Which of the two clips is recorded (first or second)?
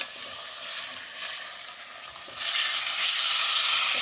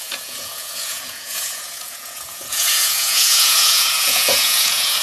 first